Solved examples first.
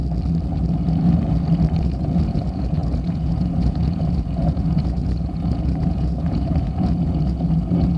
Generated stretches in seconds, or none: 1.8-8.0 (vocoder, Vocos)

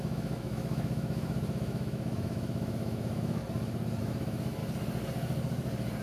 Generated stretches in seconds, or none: 0.0-3.4 (autoencoder, DAC-VAE); 4.0-4.6

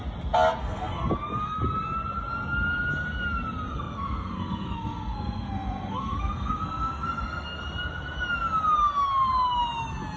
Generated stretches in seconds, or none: 0.6-1.1 (codec, SNAC); 3.7-7.6

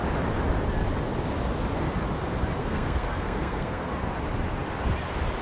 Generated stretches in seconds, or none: 2.6-3.9 (codec, SNAC)